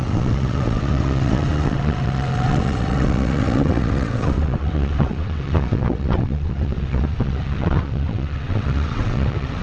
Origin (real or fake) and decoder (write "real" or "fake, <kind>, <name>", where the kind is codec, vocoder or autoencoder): fake, vocoder, WaveNeXt